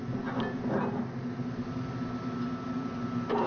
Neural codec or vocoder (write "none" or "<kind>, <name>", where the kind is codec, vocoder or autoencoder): none